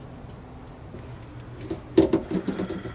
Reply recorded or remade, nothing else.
recorded